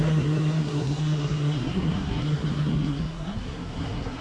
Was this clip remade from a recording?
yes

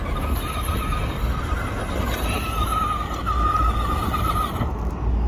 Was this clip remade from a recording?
no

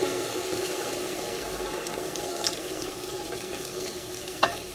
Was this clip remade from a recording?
yes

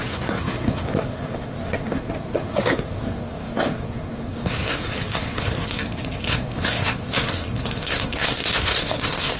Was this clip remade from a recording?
yes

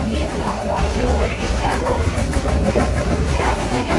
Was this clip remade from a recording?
yes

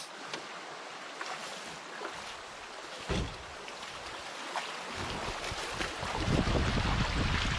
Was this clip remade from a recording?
no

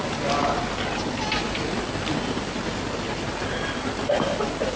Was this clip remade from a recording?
no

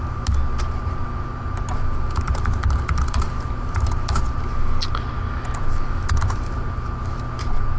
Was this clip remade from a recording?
no